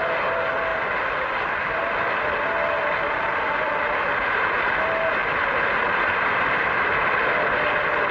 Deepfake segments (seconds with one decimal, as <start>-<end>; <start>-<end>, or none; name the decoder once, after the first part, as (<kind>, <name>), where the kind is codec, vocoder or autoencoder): 0.7-3.8 (vocoder, BigVGAN v2); 5.2-5.9